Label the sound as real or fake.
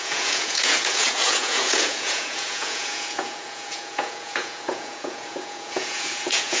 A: fake